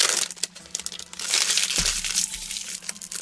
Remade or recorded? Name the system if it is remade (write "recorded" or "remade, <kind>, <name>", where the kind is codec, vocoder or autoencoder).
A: recorded